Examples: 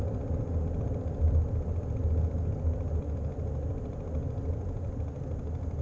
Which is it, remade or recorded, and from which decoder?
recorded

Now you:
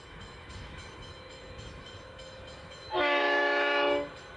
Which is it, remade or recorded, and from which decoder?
remade, autoencoder, DAC-VAE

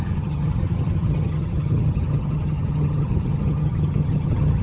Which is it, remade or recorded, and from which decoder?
remade, vocoder, HiFi-GAN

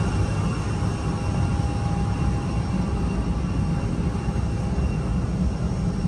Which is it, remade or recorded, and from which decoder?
recorded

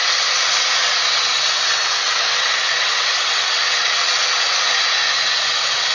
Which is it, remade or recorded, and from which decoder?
remade, vocoder, WaveNeXt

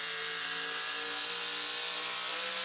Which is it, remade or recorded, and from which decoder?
recorded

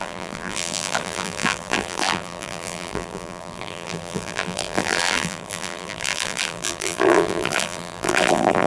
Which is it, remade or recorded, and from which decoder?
remade, vocoder, BigVGAN v2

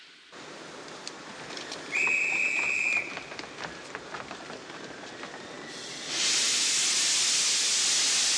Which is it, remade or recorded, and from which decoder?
recorded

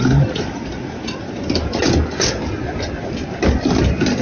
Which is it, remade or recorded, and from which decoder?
recorded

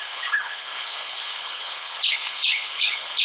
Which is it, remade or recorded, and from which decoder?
remade, codec, HILCodec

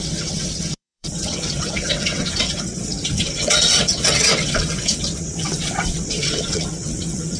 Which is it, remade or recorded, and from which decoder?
remade, vocoder, WaveNeXt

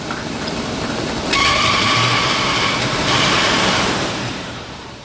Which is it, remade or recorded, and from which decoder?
remade, vocoder, BigVGAN v2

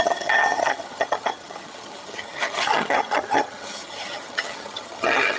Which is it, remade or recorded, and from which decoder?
remade, vocoder, HiFi-GAN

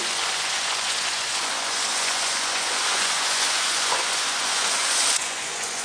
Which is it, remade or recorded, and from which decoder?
remade, vocoder, Vocos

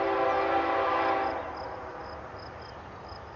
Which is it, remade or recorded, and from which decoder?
recorded